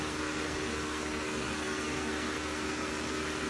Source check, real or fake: fake